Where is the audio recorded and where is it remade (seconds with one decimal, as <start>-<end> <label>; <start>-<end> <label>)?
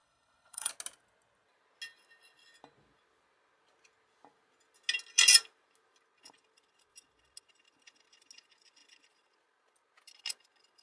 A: 0.0-0.7 remade; 0.7-10.8 recorded